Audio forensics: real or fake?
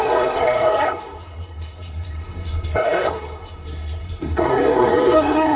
fake